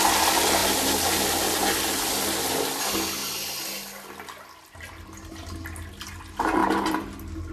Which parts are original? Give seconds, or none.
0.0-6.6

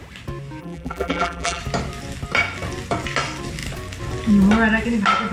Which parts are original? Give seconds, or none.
0.0-0.6; 1.6-5.3

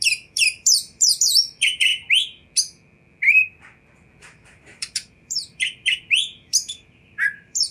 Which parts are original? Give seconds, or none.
1.9-4.2